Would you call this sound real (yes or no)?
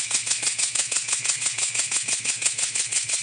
no